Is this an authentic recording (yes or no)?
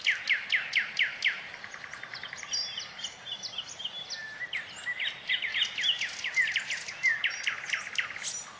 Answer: yes